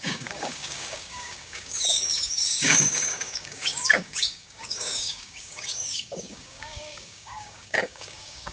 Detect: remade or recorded remade